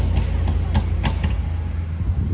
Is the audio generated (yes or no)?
no